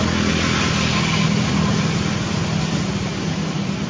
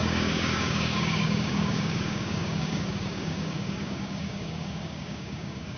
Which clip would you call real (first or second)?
first